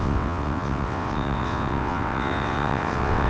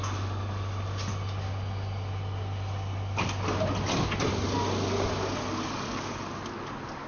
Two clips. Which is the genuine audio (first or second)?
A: second